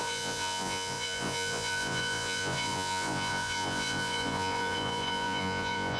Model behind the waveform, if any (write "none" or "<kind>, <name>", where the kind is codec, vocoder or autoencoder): vocoder, Vocos